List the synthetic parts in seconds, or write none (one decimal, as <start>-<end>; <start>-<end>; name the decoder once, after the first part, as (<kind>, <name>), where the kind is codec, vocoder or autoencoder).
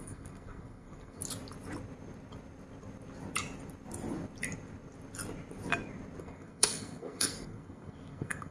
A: 0.0-1.2 (codec, SNAC); 6.2-8.5